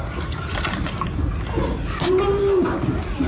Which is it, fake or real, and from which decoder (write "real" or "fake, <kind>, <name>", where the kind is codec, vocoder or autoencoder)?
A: real